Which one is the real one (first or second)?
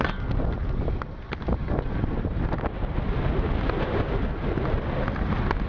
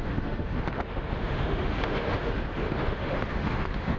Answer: first